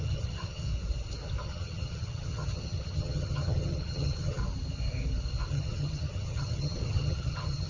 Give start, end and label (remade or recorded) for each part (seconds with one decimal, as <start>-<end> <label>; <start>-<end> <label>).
0.0-0.7 remade; 0.7-1.4 recorded; 1.4-4.4 remade; 4.4-5.5 recorded; 5.5-7.7 remade